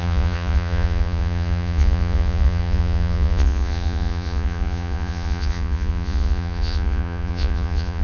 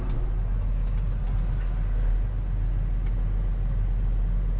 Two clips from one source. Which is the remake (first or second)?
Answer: first